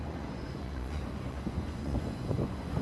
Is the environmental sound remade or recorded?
remade